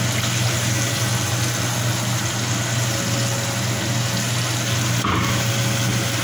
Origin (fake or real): real